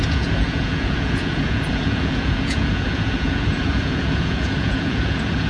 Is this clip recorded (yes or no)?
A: no